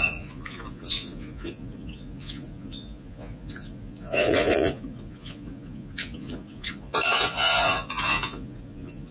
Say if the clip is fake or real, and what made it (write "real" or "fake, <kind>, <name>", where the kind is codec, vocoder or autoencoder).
fake, vocoder, Vocos